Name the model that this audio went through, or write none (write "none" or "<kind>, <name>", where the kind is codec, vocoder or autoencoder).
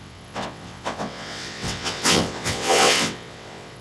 vocoder, WaveNeXt